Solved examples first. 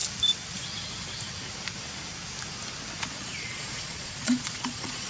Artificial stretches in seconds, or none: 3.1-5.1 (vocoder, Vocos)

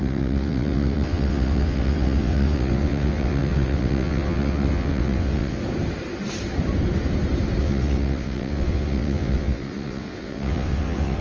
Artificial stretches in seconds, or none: 0.0-5.6 (vocoder, WaveNeXt); 7.6-11.2